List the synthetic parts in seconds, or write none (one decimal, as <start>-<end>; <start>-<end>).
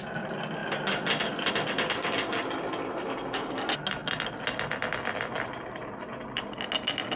none